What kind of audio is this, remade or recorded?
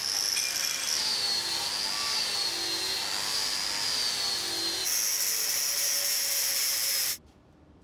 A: recorded